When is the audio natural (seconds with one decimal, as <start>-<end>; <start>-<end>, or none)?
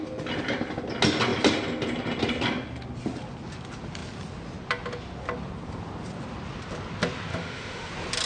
0.0-7.3; 7.9-8.3